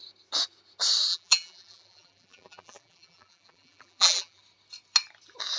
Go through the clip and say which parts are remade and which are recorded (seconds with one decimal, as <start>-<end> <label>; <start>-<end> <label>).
0.0-1.1 recorded; 1.1-4.4 remade; 4.4-5.6 recorded